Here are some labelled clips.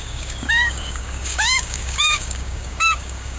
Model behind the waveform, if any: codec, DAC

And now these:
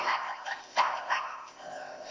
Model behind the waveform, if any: codec, ZipCodec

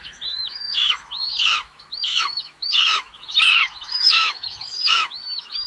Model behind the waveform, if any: autoencoder, DAC-VAE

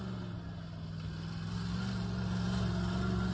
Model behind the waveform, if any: none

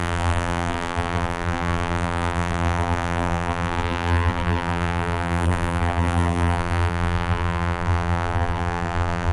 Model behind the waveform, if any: vocoder, BigVGAN v2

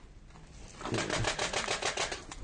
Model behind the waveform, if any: none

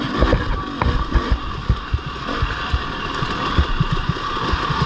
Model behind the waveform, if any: none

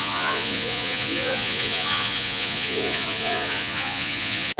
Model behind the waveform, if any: vocoder, Vocos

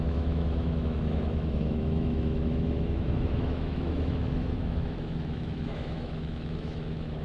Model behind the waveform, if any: autoencoder, DAC-VAE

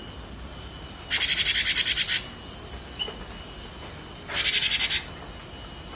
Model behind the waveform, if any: none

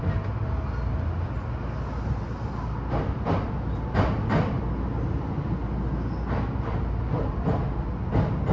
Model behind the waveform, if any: none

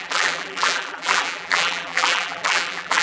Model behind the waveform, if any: vocoder, BigVGAN v2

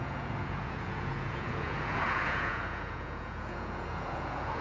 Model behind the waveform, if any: vocoder, Vocos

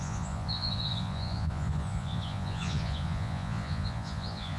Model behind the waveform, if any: vocoder, Vocos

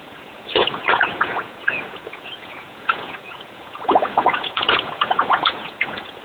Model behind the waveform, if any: vocoder, Vocos